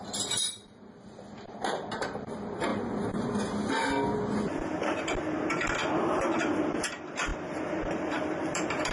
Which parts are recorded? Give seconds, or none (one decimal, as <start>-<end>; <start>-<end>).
2.7-4.1